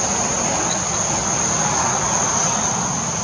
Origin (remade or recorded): recorded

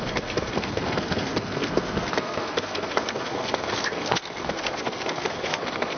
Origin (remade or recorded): remade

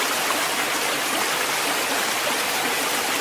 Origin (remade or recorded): recorded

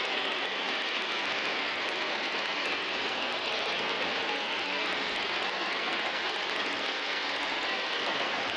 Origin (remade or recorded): remade